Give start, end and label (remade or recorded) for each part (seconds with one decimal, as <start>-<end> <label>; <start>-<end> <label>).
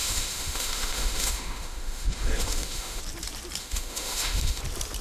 0.0-3.0 remade; 3.0-3.6 recorded; 3.6-4.6 remade; 4.6-5.0 recorded